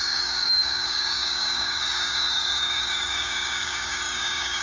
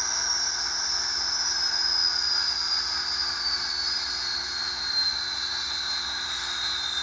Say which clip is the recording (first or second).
second